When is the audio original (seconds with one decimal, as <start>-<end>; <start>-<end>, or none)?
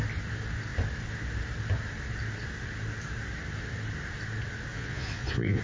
0.0-4.7